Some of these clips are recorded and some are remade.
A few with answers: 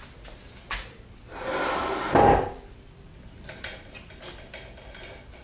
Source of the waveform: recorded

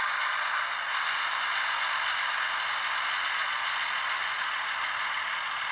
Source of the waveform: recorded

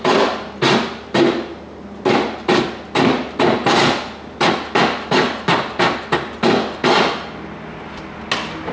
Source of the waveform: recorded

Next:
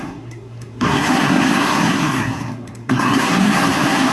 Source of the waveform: remade